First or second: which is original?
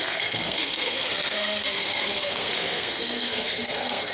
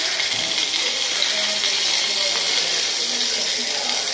second